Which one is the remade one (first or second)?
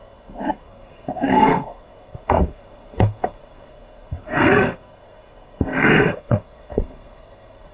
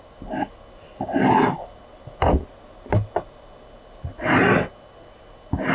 first